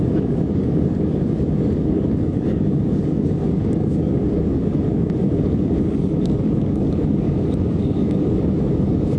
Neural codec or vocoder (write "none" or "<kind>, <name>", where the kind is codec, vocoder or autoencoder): codec, DAC